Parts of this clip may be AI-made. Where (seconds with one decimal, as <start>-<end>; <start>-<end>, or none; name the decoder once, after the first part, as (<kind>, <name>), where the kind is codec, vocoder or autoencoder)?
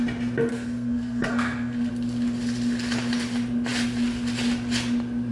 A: 0.5-1.9 (codec, SNAC)